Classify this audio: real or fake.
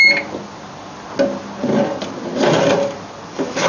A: real